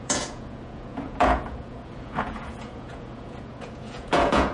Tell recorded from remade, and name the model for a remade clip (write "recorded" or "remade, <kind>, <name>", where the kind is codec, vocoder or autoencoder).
remade, vocoder, Vocos